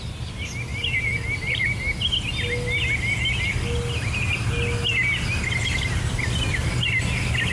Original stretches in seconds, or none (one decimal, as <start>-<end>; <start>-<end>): 0.0-5.6; 6.2-7.5